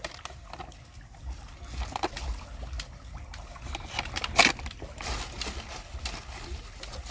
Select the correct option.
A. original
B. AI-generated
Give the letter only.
A